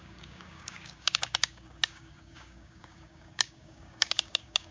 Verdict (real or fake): fake